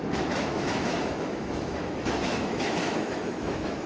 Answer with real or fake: fake